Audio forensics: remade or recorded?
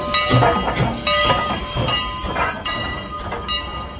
recorded